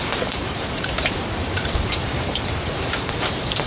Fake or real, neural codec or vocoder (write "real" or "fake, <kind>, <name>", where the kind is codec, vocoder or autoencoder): fake, vocoder, BigVGAN v2